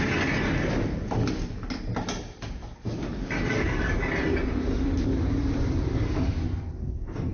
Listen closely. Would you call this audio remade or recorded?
recorded